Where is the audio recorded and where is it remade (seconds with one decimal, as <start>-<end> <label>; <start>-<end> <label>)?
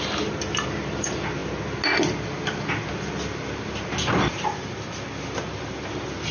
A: 0.0-6.3 recorded